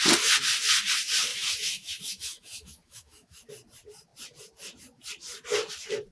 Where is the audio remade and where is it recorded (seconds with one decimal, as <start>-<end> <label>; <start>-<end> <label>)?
0.0-1.3 recorded; 1.3-3.5 remade; 3.5-6.1 recorded